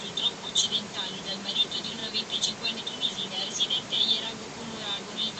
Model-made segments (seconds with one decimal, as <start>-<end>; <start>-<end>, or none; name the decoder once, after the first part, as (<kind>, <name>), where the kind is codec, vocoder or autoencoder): 0.0-2.0 (vocoder, BigVGAN v2); 2.8-5.4